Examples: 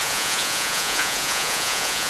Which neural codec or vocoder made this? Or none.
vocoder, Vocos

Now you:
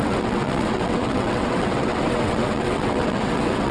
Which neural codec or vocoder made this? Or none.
vocoder, WaveNeXt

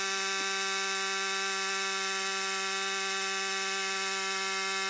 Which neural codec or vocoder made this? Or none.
none